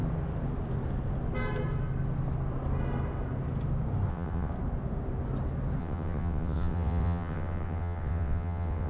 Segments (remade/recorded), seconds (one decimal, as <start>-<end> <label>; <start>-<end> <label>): 0.0-4.1 recorded; 4.1-4.5 remade; 4.5-5.8 recorded; 5.8-8.9 remade